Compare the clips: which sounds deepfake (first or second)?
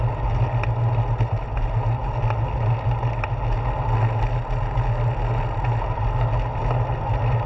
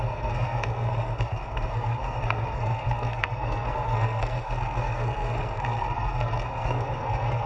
second